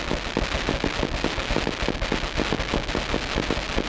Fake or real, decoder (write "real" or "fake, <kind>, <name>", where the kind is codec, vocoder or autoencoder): real